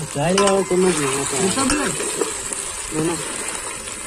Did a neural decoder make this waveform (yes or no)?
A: no